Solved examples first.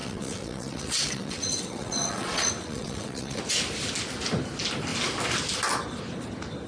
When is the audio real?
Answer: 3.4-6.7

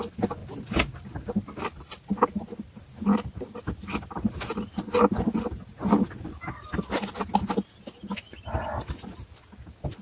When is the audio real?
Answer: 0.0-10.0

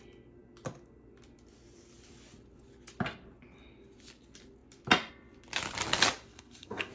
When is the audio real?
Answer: 0.0-6.3

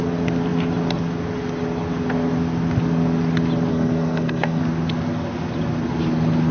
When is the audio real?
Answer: 0.0-3.7; 4.6-6.5

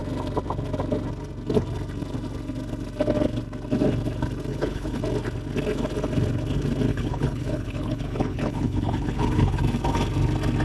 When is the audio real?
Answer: 0.0-4.5; 5.0-6.9; 9.6-10.6

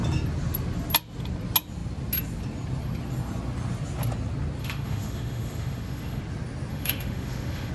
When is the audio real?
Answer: 0.0-4.6; 6.2-6.7

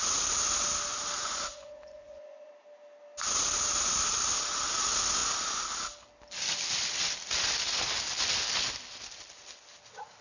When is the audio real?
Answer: 0.0-1.2; 2.5-10.2

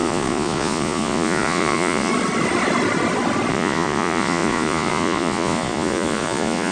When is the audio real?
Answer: 2.1-3.5